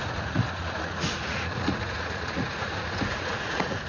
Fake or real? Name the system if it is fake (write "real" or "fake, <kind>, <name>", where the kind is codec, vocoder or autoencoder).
fake, vocoder, Vocos